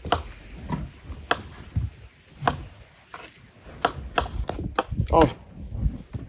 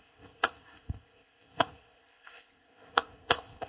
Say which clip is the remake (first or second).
second